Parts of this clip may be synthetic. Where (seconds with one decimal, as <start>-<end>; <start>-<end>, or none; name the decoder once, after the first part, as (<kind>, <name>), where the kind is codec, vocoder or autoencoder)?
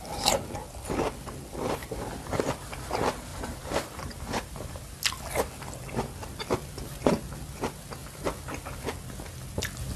1.8-2.5 (vocoder, BigVGAN v2); 3.3-4.8